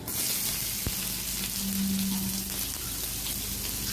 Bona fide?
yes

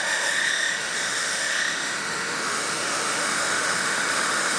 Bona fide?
no